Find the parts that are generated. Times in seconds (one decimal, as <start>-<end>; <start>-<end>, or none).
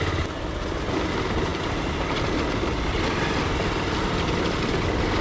none